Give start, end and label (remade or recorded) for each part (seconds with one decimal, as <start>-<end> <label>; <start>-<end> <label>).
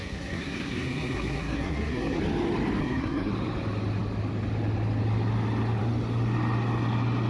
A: 0.0-2.2 remade; 2.2-2.8 recorded; 2.8-3.3 remade; 3.3-7.3 recorded